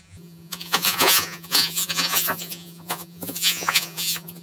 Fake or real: fake